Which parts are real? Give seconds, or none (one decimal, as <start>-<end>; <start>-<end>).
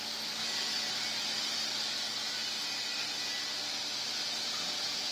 0.0-5.1